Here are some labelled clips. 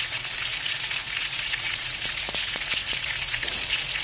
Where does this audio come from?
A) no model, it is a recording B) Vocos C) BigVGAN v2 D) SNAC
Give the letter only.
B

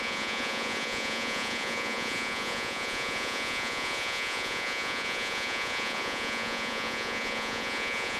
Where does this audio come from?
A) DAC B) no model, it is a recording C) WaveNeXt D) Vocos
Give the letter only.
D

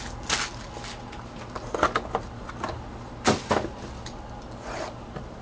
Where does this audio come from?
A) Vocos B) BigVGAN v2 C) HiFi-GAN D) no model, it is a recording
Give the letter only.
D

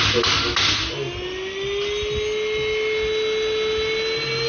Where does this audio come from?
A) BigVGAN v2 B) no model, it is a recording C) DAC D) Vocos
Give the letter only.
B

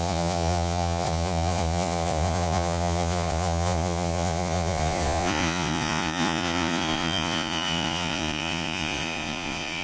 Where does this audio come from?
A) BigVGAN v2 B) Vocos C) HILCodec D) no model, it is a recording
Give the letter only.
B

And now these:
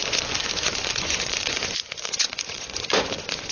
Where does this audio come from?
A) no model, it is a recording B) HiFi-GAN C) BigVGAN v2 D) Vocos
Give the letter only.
D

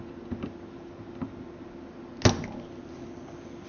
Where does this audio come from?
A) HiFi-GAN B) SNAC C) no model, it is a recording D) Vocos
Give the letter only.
C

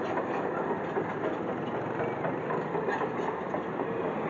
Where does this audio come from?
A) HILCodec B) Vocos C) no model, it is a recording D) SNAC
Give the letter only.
C